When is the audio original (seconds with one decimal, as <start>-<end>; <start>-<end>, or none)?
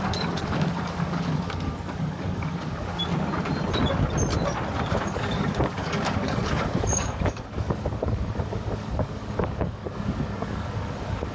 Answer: 3.0-5.1